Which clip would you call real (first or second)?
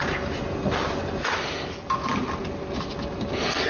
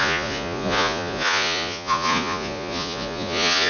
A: first